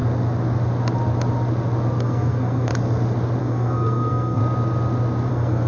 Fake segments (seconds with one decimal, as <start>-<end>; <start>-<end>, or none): 2.0-2.7; 3.4-4.4; 5.3-5.7